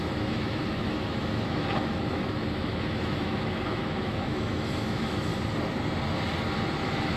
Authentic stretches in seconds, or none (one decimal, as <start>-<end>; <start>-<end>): 5.3-6.8